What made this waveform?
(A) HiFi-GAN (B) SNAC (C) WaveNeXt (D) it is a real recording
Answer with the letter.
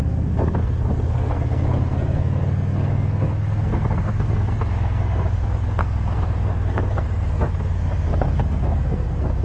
B